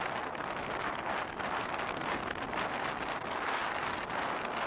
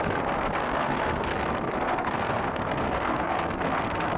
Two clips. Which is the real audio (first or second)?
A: first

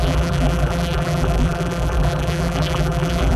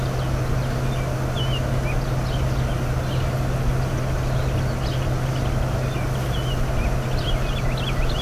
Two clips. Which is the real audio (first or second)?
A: second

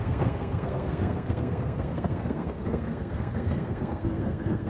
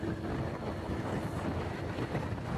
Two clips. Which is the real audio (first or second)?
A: second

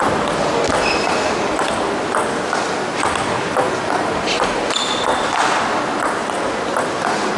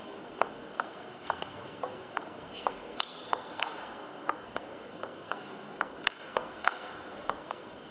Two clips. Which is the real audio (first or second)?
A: first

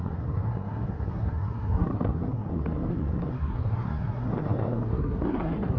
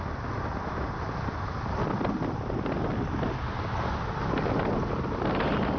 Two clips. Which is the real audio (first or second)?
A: second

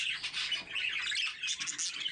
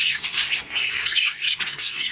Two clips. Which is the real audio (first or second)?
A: first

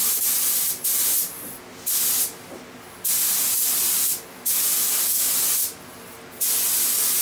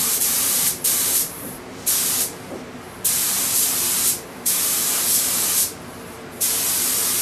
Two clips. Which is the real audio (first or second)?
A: first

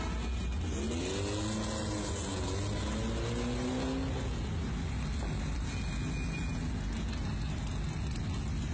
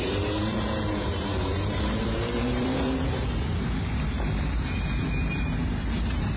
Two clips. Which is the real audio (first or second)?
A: first